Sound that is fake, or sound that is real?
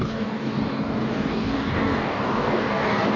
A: fake